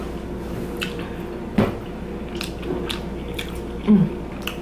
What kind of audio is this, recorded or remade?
recorded